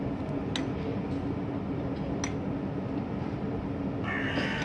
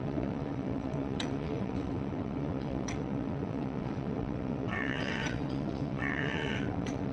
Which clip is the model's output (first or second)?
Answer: second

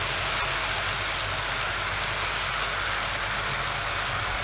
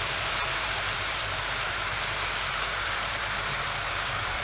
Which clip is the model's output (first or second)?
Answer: second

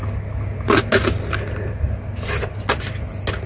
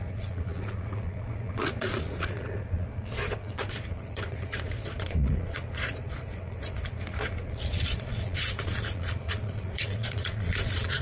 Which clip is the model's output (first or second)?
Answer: second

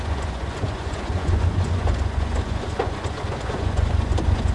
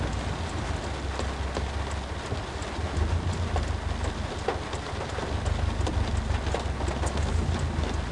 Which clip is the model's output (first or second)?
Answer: first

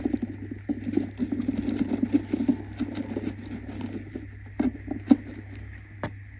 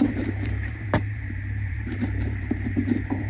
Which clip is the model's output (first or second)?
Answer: second